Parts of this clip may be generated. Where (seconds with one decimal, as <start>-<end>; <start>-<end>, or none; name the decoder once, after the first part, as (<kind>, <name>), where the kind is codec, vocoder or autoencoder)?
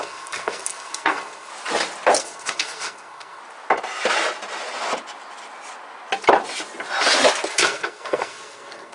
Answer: 0.0-1.5 (codec, SNAC); 2.2-3.4; 7.5-8.9